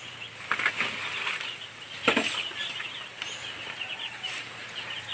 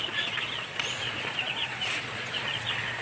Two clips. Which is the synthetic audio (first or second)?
second